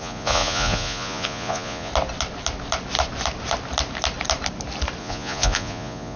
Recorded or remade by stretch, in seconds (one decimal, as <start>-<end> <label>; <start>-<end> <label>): 0.0-1.9 remade; 1.9-5.0 recorded; 5.0-6.2 remade